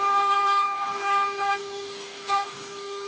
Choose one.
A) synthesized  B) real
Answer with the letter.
A